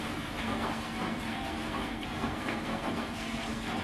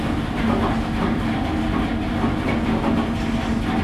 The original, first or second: second